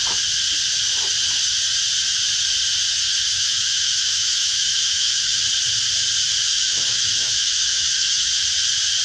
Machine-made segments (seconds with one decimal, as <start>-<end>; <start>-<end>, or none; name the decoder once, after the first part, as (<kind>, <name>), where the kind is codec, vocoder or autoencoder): 3.3-5.4 (autoencoder, DAC-VAE); 6.5-8.3